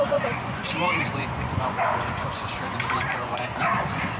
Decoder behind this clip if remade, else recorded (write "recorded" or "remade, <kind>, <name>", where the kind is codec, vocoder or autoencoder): remade, vocoder, Vocos